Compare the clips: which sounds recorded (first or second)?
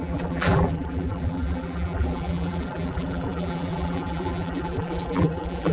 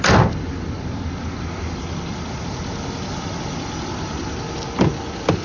second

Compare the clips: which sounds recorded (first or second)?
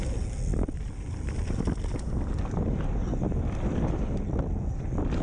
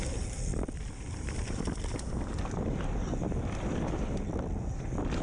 first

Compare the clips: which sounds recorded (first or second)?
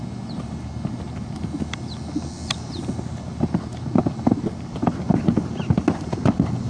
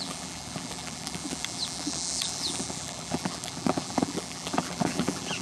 first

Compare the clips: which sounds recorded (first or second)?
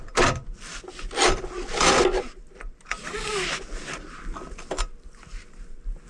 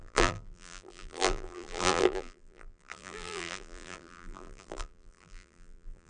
first